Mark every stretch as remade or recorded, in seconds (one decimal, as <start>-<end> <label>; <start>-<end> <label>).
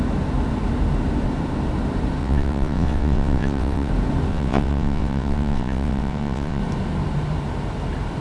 0.0-2.2 recorded; 2.2-3.9 remade; 3.9-4.3 recorded; 4.3-6.6 remade; 6.6-8.2 recorded